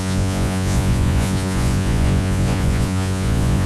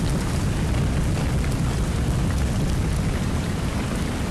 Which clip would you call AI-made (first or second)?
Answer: first